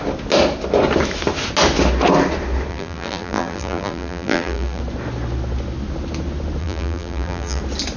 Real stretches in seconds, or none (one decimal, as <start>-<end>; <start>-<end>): 0.0-2.7; 4.8-6.6; 7.6-8.0